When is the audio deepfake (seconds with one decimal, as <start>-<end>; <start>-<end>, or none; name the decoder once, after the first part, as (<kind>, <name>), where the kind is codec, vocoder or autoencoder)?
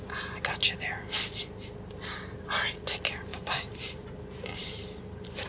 3.3-3.8 (vocoder, BigVGAN v2); 4.6-5.5